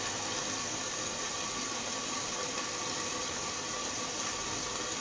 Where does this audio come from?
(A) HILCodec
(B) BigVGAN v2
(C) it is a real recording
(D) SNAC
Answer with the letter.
C